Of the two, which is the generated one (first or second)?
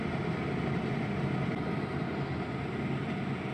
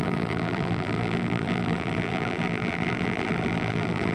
second